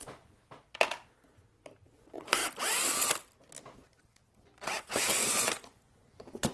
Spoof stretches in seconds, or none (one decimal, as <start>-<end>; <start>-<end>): 0.0-0.4; 1.9-2.4; 4.0-6.5